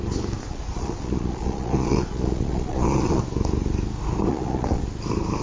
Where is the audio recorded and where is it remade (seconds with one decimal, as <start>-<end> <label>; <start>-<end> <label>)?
0.0-0.4 recorded; 0.4-3.2 remade; 3.2-4.3 recorded; 4.3-4.8 remade; 4.8-5.4 recorded